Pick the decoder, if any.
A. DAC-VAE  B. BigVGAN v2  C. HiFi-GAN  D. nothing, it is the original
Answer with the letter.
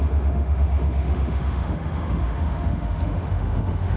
A